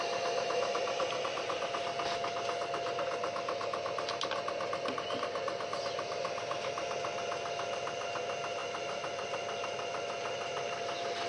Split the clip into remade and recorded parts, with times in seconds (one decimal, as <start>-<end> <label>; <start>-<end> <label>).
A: 0.0-11.3 recorded